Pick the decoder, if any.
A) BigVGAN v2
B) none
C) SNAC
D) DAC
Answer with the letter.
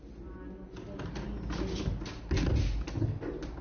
B